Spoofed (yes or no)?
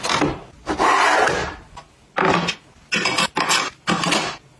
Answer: no